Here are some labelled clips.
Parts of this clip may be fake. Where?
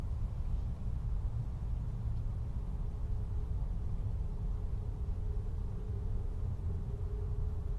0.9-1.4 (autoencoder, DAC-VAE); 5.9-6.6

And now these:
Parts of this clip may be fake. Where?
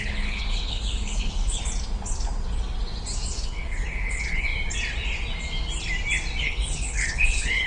0.0-1.6 (codec, HILCodec); 3.3-4.5; 6.4-7.7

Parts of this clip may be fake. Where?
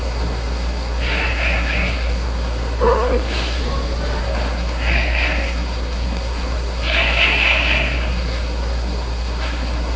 0.0-3.6 (codec, SNAC); 4.2-10.0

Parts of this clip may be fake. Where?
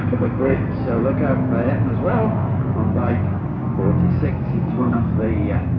0.0-0.8 (codec, SNAC); 4.3-5.1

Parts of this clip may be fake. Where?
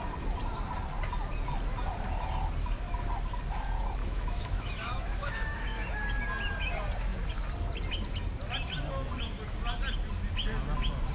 4.0-5.9 (autoencoder, DAC-VAE)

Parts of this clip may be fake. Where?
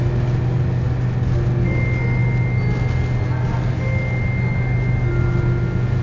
none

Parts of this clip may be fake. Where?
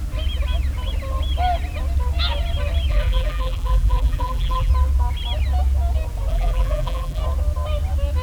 2.9-4.7 (vocoder, BigVGAN v2); 6.3-7.2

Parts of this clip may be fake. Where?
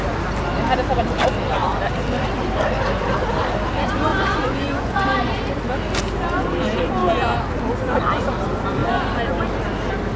4.1-5.3 (vocoder, Vocos)